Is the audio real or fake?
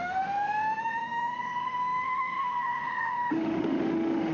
fake